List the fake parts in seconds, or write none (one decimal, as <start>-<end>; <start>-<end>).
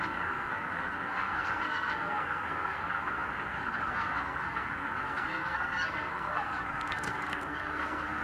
0.0-8.2